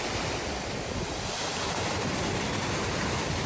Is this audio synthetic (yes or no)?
no